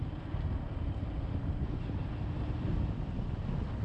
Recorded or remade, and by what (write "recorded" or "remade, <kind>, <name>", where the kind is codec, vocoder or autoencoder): recorded